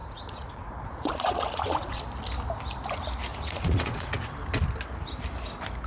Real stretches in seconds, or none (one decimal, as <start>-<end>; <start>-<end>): 2.0-3.3; 4.3-5.9